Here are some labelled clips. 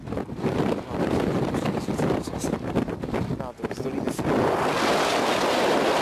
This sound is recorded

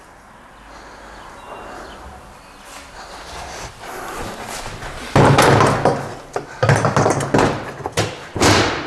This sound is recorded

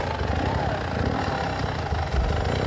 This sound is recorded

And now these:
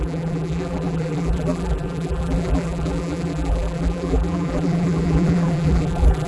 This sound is remade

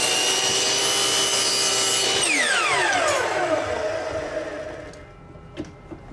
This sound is recorded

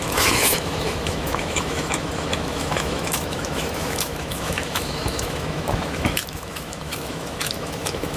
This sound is remade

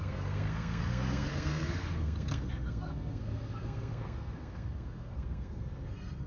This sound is remade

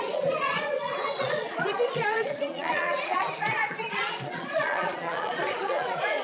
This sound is remade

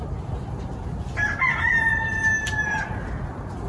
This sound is recorded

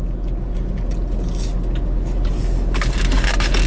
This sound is recorded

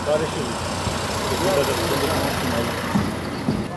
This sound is recorded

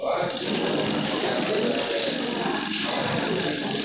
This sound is recorded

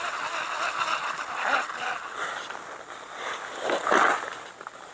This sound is recorded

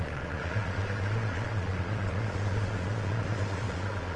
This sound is remade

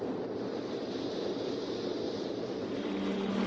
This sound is recorded